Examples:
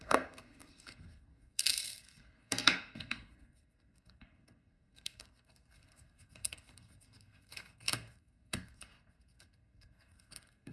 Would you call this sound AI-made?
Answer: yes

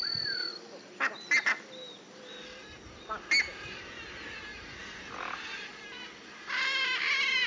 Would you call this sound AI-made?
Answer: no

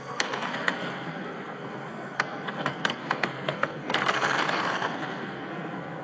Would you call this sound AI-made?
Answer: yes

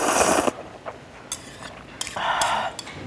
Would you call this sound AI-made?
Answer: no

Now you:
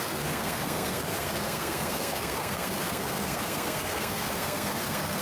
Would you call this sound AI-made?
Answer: yes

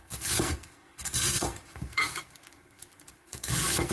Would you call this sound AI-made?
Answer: yes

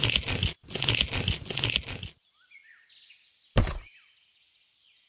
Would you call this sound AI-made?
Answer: no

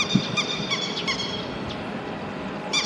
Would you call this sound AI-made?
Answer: no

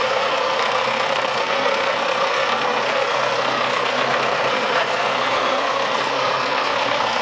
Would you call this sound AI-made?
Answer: yes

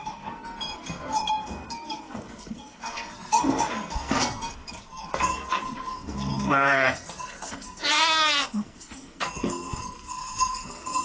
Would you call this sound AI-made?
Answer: yes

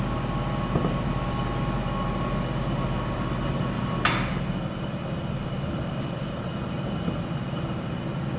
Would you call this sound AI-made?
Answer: no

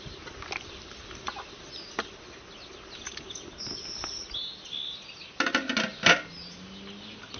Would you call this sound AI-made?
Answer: no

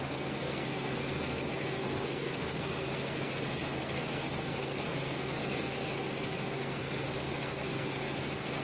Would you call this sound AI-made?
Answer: yes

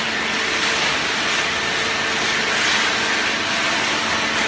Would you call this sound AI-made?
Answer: no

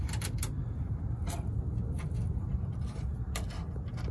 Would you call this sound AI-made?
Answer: no